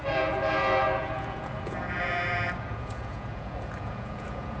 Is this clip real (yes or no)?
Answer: no